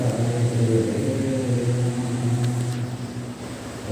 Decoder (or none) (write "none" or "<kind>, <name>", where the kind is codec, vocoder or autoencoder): none